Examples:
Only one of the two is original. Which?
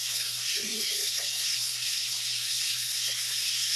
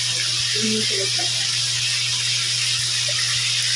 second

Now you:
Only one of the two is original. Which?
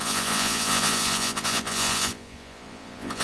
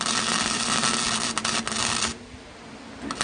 second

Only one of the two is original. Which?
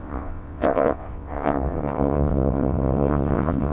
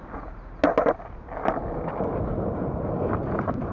second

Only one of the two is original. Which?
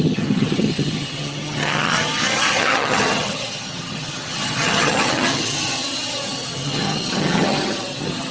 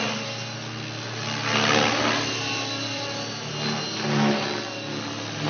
second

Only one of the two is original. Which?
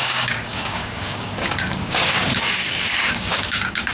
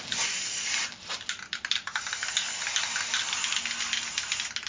second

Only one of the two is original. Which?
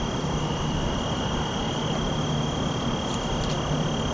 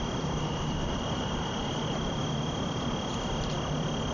first